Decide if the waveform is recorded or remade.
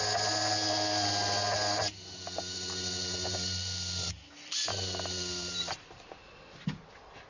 recorded